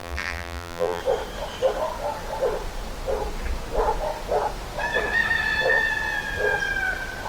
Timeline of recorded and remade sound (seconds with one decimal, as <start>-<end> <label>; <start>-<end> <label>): 0.0-1.0 remade; 1.0-7.3 recorded